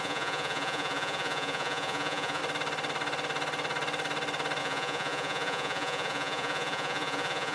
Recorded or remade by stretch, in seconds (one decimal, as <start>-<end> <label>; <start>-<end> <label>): 0.0-2.4 remade; 2.4-4.6 recorded; 4.6-7.5 remade